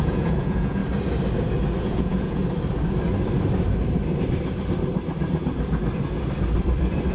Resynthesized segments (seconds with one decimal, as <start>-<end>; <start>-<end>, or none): 0.0-0.8; 1.8-2.4